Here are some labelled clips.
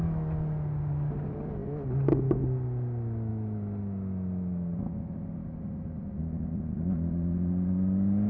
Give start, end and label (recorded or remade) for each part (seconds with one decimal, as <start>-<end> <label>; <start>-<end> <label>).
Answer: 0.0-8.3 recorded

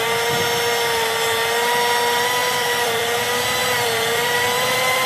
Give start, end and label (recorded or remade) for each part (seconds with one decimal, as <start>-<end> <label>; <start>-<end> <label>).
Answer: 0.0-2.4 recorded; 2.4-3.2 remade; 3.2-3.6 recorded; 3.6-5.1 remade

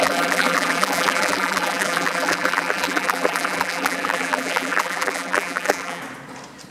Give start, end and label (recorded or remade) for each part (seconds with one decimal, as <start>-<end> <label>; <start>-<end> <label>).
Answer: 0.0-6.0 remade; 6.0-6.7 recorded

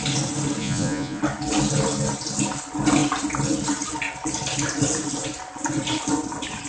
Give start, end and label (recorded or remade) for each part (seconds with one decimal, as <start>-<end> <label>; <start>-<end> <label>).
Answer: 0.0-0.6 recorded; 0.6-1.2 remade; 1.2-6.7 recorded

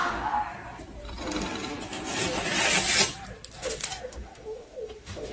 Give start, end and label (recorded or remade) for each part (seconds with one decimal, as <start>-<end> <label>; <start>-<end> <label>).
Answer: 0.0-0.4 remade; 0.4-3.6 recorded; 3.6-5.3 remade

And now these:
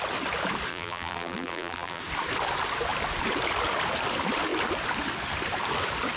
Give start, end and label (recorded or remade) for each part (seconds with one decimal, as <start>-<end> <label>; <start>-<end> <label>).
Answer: 0.0-0.7 recorded; 0.7-2.0 remade; 2.0-6.2 recorded